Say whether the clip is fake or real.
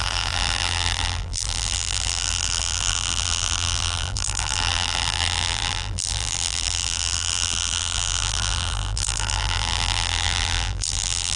fake